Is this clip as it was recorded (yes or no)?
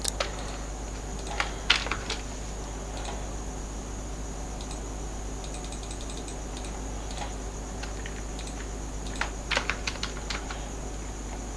yes